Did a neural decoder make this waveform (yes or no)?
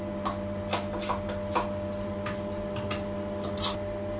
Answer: no